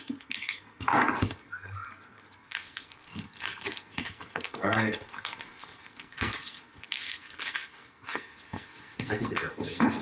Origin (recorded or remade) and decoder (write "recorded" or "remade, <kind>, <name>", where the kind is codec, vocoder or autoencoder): remade, codec, SNAC